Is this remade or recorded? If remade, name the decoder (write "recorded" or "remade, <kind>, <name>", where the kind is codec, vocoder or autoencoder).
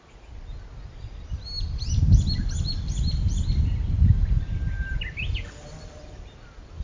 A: recorded